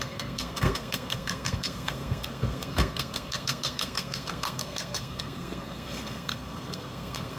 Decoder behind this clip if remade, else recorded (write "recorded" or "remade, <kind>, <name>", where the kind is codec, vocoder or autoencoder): remade, codec, SNAC